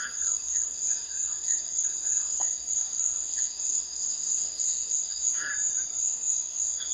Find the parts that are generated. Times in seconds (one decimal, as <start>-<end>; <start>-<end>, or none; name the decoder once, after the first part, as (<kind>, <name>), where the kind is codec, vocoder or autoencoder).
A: 0.0-5.5 (codec, SNAC); 6.0-6.9